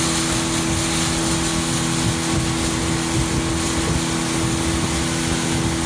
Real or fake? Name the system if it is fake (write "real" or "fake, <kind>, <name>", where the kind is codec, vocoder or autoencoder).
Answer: real